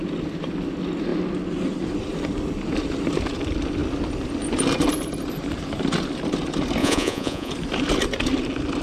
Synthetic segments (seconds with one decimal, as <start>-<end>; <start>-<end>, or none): 6.8-7.5